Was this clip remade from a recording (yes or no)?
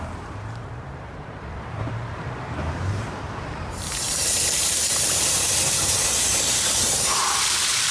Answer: yes